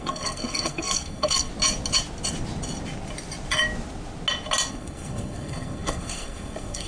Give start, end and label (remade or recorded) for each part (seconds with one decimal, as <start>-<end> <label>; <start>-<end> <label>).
0.0-1.5 remade; 1.5-4.7 recorded; 4.7-6.9 remade